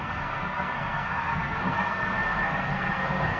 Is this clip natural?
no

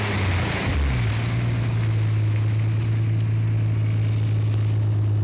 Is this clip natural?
yes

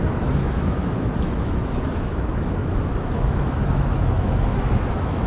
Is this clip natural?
no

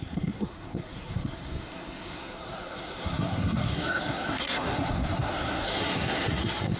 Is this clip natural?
no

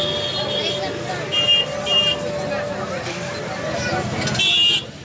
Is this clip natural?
yes